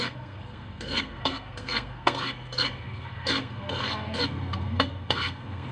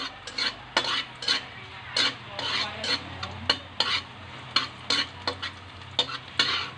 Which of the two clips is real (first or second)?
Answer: second